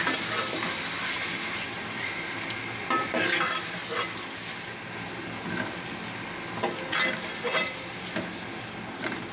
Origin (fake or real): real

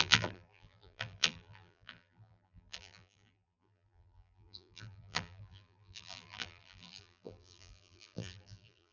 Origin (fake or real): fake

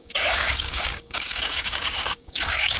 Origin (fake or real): fake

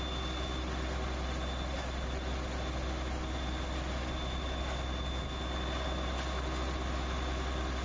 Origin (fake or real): real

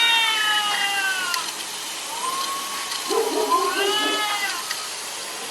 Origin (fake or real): real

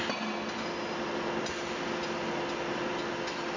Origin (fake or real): real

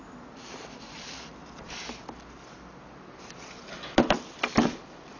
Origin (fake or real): real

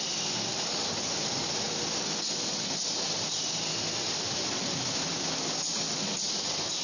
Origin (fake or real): real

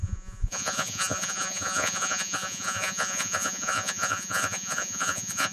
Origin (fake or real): fake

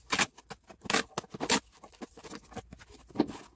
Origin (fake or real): real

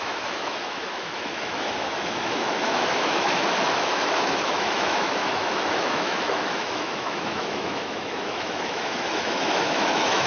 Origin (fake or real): fake